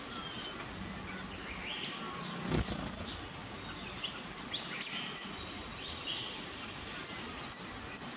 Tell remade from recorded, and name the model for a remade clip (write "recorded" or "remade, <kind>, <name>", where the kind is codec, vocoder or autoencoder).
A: recorded